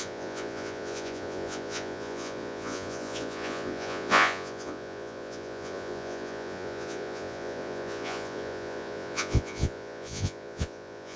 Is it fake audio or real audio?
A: fake